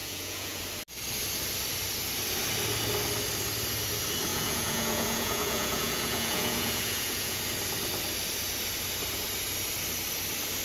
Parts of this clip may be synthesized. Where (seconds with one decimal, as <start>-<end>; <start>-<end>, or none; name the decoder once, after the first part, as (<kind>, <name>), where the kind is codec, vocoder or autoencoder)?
0.0-0.6 (vocoder, Vocos); 4.3-7.4

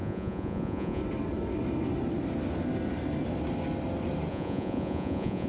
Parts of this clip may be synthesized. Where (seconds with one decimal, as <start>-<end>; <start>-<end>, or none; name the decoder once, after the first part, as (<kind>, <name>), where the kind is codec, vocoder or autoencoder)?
0.0-1.0 (vocoder, Vocos); 4.3-5.5

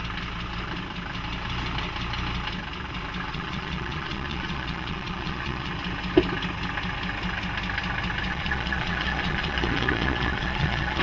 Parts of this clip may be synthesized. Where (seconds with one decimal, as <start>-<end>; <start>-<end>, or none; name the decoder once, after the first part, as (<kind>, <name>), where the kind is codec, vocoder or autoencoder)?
3.3-5.7 (vocoder, Vocos); 8.3-11.0

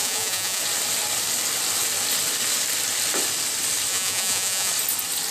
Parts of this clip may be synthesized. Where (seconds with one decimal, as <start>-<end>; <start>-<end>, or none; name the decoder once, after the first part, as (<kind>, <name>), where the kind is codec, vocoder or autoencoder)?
0.0-0.6 (vocoder, Vocos); 3.9-4.7

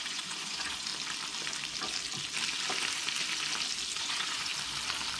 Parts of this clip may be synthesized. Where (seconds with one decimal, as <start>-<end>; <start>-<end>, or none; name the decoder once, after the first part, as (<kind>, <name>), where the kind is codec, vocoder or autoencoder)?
0.0-0.9 (vocoder, Vocos); 4.0-4.5

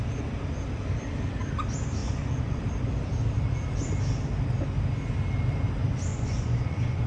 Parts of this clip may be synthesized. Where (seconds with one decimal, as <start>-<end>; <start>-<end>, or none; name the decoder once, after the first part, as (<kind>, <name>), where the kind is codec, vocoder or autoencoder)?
2.0-2.6 (vocoder, Vocos); 6.1-7.1

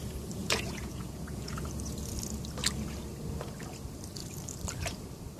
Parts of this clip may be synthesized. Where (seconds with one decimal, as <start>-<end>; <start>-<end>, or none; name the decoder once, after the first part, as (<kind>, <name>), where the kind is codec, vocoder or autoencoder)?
0.4-1.6 (vocoder, Vocos)

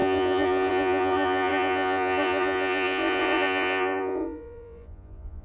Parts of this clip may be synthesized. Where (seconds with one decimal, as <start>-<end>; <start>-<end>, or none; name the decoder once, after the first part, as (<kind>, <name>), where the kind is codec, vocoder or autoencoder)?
0.0-5.4 (vocoder, Vocos)